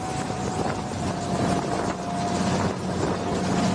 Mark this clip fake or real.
real